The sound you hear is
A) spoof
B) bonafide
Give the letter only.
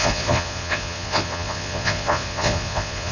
A